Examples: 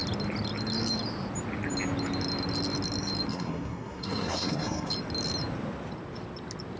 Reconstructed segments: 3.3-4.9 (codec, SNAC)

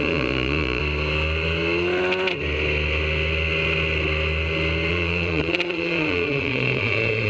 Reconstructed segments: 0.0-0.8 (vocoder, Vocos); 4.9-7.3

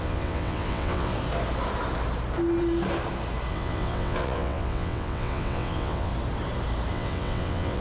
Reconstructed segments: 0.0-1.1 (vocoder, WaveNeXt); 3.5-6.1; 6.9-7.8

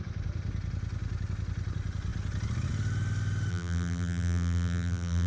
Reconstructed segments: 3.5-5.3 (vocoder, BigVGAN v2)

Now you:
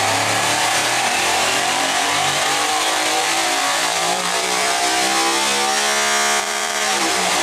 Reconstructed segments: 0.8-4.8 (vocoder, BigVGAN v2); 6.4-7.4

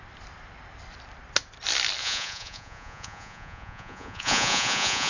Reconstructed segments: 2.0-5.1 (vocoder, Vocos)

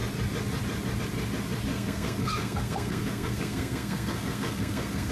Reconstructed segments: 1.7-5.1 (codec, SNAC)